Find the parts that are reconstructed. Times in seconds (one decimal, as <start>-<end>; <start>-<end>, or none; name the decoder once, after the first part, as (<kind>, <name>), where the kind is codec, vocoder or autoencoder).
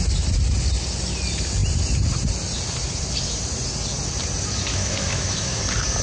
4.7-5.6 (autoencoder, DAC-VAE)